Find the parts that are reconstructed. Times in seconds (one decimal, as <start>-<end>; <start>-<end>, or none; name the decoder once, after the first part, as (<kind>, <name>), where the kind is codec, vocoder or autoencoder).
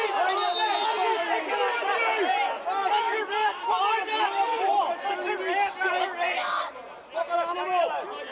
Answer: 2.8-5.3 (vocoder, BigVGAN v2)